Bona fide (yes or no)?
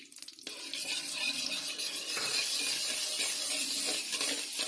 yes